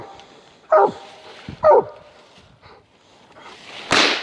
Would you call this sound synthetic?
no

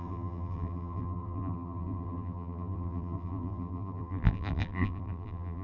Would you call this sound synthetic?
yes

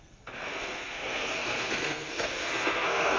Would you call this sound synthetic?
yes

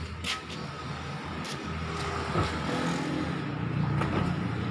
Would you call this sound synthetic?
no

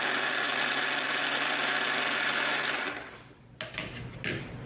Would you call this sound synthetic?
no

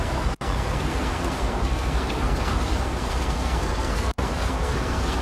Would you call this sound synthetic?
yes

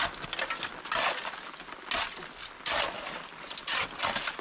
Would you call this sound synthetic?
no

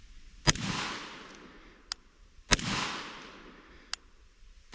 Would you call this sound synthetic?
no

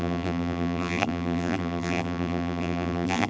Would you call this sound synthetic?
yes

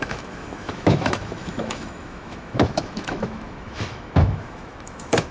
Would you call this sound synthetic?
yes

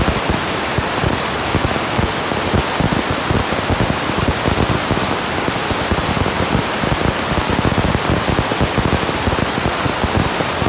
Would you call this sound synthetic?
no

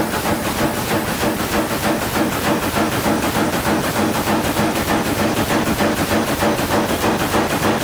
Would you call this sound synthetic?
no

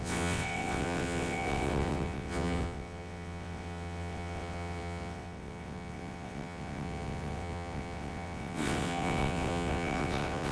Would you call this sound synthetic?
yes